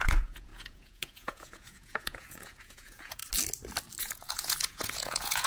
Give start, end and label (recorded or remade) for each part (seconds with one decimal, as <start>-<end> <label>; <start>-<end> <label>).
0.0-3.2 remade; 3.2-4.0 recorded; 4.0-5.5 remade